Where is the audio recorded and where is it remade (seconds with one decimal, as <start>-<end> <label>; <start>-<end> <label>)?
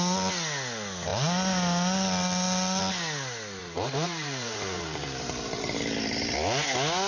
0.0-3.6 recorded; 3.6-5.8 remade; 5.8-7.1 recorded